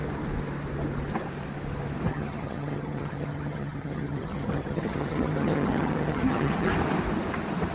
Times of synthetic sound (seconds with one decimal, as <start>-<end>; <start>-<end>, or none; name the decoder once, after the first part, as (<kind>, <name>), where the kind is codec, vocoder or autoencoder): 2.1-6.7 (vocoder, HiFi-GAN)